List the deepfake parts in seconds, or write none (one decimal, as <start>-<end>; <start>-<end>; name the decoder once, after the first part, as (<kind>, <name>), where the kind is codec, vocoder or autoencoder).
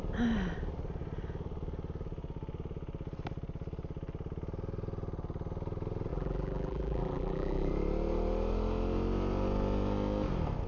6.1-7.7 (vocoder, BigVGAN v2)